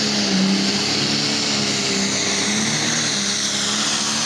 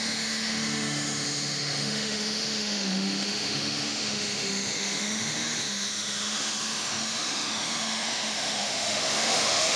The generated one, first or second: second